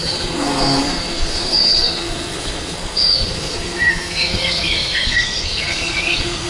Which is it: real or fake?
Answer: fake